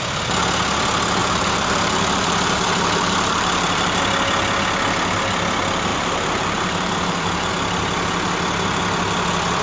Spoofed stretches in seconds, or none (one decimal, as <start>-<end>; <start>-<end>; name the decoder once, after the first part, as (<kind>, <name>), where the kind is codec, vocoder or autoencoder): 1.2-4.0 (vocoder, BigVGAN v2); 5.9-7.5